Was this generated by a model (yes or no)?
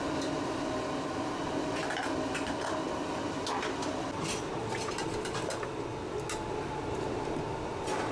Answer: no